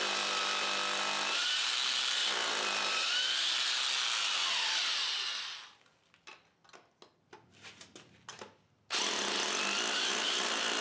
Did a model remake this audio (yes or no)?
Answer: no